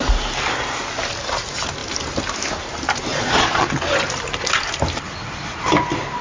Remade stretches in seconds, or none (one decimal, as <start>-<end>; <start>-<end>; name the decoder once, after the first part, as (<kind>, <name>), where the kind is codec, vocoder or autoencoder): 3.1-3.7 (vocoder, Vocos)